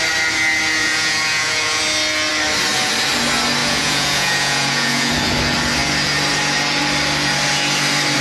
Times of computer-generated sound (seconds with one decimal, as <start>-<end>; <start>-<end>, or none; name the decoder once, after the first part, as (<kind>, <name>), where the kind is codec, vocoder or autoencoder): 0.8-1.8 (vocoder, Vocos); 3.6-5.1